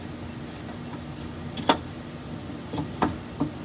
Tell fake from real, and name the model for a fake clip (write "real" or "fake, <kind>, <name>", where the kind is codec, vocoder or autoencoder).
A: real